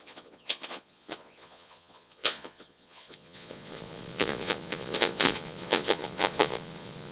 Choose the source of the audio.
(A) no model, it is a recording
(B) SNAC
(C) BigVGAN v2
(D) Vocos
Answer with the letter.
D